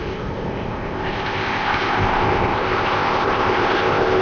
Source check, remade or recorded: remade